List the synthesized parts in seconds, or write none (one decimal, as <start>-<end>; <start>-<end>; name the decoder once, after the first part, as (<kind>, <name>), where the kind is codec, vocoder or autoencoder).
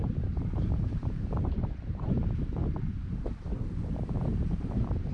0.0-2.6 (vocoder, BigVGAN v2); 4.4-5.1